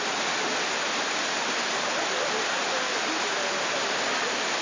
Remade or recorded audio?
recorded